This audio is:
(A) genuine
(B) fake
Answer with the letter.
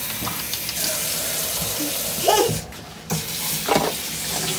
A